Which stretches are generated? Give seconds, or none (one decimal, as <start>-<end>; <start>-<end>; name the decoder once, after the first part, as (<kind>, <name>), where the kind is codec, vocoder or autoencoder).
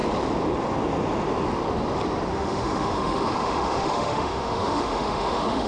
2.3-5.7 (autoencoder, DAC-VAE)